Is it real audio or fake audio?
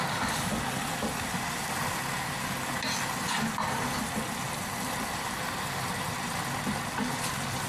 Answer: real